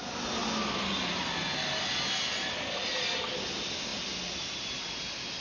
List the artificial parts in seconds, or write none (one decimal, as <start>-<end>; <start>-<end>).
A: none